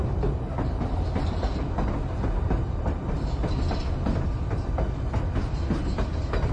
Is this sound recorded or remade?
recorded